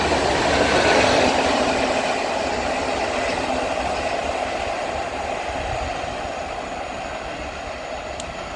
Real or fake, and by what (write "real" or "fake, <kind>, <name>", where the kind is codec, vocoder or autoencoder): real